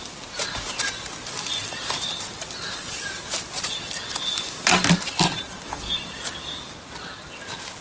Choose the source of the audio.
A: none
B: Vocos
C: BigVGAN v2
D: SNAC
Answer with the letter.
A